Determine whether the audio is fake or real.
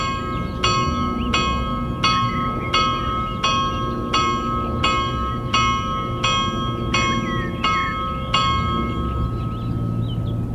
real